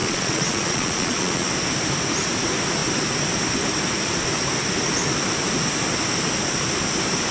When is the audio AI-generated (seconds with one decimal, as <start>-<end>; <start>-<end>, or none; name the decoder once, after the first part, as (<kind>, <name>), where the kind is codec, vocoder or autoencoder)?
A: 0.0-1.5 (vocoder, Vocos)